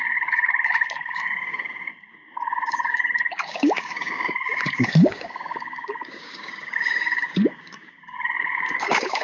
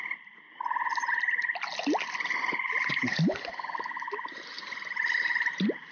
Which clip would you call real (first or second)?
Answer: second